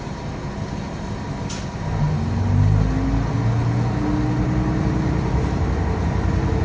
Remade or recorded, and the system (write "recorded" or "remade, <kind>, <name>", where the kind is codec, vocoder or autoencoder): recorded